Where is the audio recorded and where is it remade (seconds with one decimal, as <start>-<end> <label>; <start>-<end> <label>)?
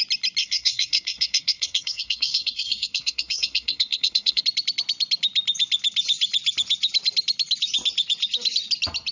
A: 0.0-0.4 recorded; 0.4-4.4 remade; 4.4-9.1 recorded